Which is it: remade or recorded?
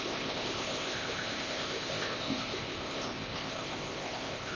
remade